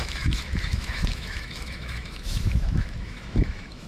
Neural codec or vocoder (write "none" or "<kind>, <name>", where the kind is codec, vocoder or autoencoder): autoencoder, DAC-VAE